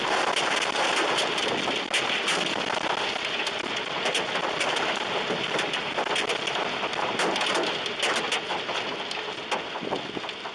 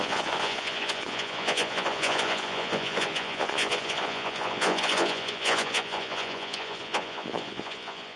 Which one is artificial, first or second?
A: second